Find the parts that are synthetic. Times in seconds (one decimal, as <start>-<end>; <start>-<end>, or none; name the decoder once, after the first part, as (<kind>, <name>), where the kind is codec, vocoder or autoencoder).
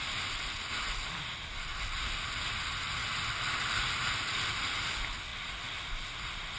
none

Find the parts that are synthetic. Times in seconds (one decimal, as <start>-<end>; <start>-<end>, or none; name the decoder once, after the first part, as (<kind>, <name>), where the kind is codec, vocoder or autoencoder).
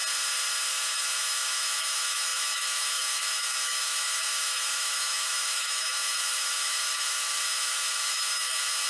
0.7-8.9 (autoencoder, DAC-VAE)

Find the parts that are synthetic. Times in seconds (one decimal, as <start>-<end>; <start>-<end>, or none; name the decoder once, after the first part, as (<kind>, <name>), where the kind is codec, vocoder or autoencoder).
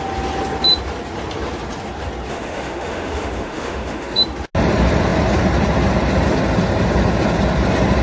2.3-4.2 (autoencoder, DAC-VAE)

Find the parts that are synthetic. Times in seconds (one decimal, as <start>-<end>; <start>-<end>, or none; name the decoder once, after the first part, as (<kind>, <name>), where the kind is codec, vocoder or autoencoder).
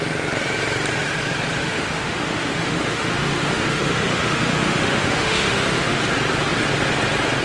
1.6-6.0 (autoencoder, DAC-VAE)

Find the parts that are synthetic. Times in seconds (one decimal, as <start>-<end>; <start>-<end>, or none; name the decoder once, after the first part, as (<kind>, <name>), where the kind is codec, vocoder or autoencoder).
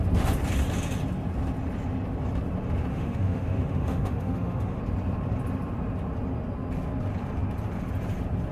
2.9-4.8 (autoencoder, DAC-VAE)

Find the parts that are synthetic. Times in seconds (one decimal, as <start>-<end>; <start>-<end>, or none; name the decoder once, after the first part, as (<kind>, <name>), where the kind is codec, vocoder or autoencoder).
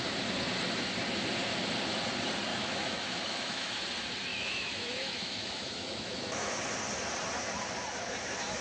2.5-3.7 (autoencoder, DAC-VAE); 4.3-6.5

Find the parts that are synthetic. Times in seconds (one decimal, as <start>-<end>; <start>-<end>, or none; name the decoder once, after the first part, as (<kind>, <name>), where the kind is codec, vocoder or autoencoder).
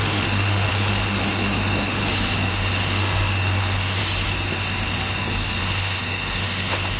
0.0-2.0 (autoencoder, DAC-VAE); 2.5-4.0; 5.6-7.0